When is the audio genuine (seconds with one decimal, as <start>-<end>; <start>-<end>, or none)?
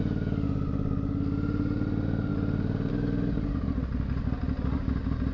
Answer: 0.0-5.3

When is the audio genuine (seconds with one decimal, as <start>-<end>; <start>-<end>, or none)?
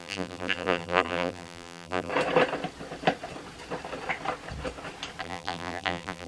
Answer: 2.1-5.2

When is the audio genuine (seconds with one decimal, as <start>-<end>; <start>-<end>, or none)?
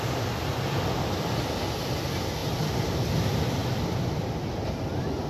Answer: 0.0-5.3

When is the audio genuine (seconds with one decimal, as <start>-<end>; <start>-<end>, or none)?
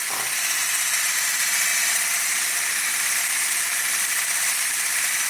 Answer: 0.0-5.3